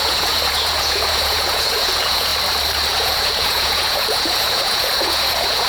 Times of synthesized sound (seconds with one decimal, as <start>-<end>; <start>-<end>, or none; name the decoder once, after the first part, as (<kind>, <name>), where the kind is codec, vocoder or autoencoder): 0.0-2.3 (vocoder, Vocos); 2.9-5.7